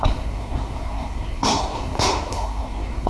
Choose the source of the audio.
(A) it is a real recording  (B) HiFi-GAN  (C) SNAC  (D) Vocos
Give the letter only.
C